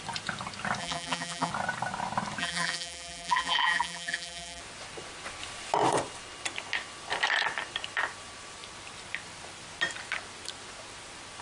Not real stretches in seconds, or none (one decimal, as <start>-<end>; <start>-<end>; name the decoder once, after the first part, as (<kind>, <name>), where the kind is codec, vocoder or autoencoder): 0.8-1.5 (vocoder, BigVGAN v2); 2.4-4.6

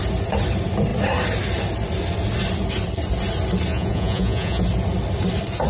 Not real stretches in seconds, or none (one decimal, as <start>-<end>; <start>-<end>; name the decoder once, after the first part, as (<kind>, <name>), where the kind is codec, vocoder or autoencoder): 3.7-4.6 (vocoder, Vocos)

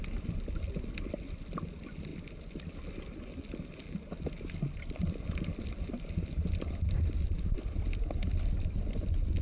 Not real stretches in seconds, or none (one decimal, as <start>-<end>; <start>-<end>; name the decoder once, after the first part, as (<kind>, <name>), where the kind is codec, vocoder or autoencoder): none